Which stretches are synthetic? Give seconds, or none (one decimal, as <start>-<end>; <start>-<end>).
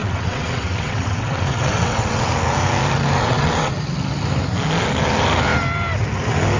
0.0-2.3; 3.2-3.8